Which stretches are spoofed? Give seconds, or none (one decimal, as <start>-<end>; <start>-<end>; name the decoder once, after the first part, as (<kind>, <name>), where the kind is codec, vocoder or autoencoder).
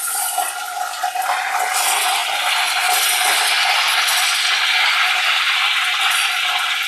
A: none